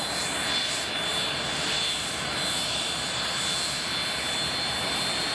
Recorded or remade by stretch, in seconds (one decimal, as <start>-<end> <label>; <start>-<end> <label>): 0.0-5.3 recorded